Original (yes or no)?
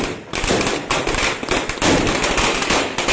no